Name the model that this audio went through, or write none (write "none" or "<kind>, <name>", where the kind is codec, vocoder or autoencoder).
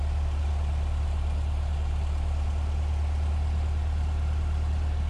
none